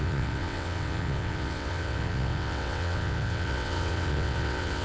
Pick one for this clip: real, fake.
fake